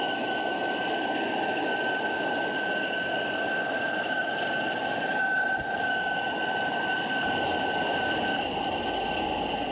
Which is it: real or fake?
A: real